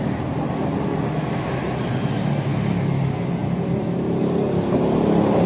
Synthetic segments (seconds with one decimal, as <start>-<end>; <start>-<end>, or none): none